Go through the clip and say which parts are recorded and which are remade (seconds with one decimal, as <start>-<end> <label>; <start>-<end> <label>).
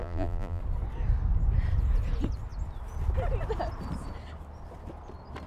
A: 0.0-0.6 remade; 0.6-5.5 recorded